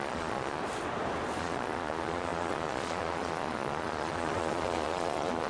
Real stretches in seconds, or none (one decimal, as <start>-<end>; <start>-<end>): 0.6-1.4

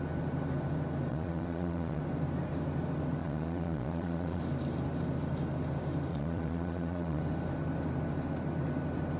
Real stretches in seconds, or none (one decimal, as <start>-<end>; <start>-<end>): 0.0-1.1; 2.0-3.2; 4.4-6.1; 7.2-9.2

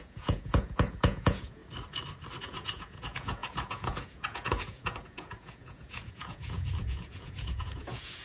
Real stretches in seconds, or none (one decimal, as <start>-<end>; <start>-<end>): 1.6-2.4

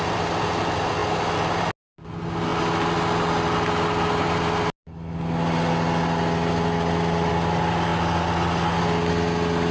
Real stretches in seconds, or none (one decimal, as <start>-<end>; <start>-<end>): 0.0-9.7

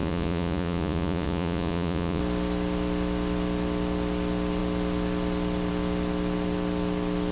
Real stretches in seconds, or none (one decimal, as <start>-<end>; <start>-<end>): 2.2-7.3

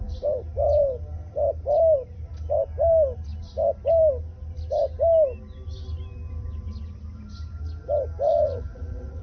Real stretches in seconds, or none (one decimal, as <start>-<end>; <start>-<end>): 0.0-8.3